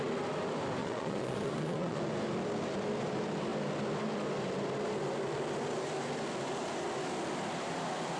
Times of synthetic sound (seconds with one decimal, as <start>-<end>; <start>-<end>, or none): 0.8-2.0